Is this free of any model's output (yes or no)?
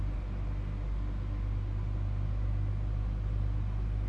yes